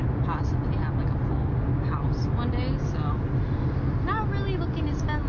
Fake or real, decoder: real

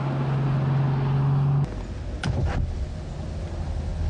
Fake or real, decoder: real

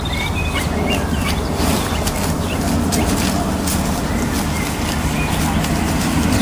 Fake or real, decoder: real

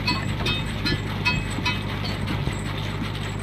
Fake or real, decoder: real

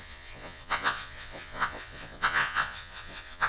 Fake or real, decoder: fake, vocoder, Vocos